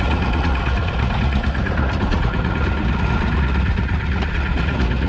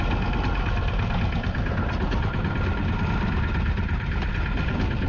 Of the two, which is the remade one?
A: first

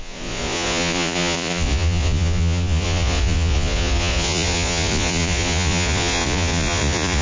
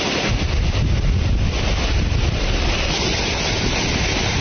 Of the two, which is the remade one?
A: first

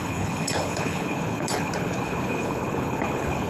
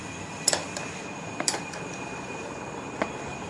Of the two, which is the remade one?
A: first